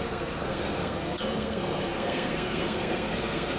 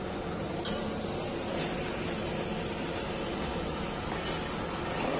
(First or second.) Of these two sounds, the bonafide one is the second